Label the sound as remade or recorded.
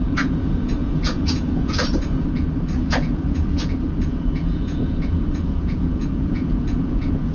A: remade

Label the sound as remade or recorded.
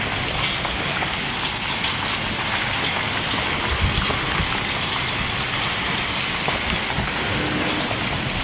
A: recorded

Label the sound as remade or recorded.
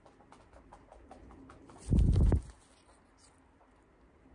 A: recorded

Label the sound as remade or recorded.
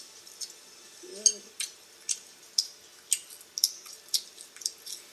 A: recorded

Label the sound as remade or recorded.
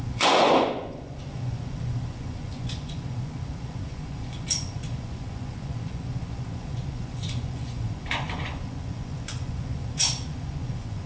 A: remade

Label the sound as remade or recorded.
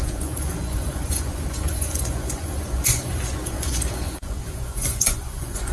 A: remade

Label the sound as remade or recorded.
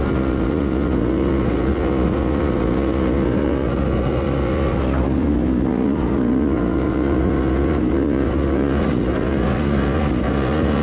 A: remade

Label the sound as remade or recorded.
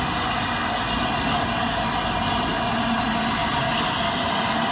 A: recorded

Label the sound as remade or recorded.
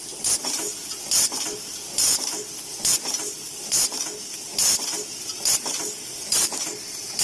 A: recorded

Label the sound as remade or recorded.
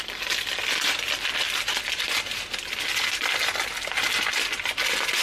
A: recorded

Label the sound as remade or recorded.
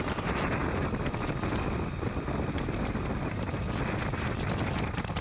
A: recorded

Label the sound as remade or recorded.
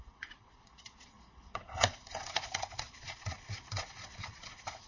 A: remade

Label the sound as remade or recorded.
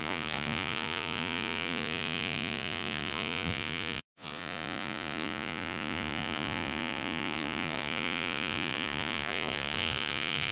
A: remade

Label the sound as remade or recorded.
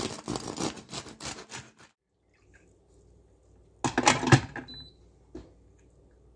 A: recorded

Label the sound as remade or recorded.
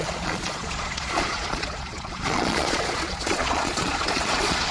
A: remade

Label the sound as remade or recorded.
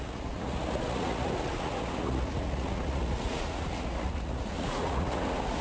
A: remade